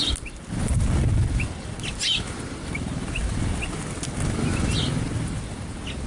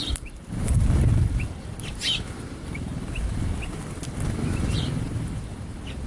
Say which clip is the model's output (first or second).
second